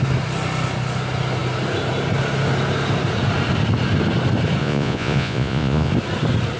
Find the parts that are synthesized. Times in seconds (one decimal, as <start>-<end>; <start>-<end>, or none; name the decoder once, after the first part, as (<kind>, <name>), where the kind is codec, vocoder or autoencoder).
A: 4.6-5.9 (vocoder, Vocos)